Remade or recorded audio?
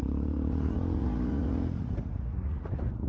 remade